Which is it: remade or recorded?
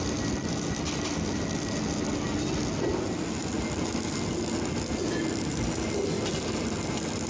recorded